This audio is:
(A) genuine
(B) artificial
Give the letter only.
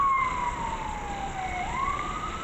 A